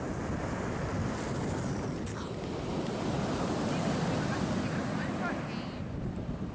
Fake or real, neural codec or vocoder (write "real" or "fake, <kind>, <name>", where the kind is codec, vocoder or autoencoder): real